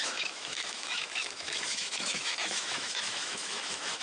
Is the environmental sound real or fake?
fake